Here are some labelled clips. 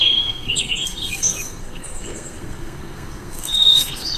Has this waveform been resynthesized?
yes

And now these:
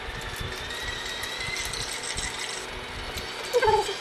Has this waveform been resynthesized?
no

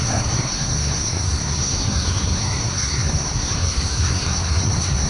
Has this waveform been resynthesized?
yes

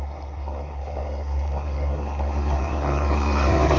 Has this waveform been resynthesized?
yes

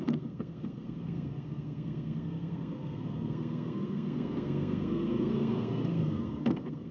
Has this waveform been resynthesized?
yes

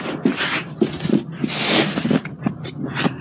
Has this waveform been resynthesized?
no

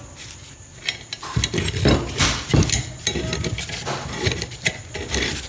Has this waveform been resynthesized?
no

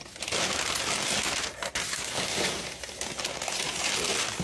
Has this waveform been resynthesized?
no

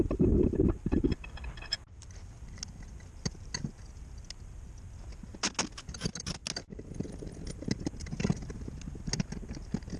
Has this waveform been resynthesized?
no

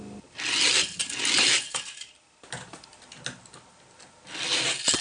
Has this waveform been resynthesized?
no